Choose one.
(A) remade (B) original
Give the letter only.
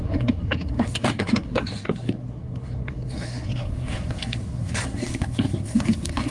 A